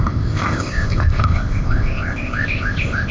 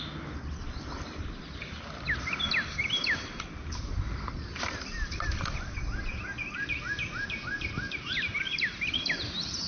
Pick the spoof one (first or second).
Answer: first